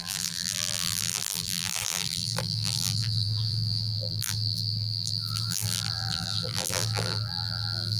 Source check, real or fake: fake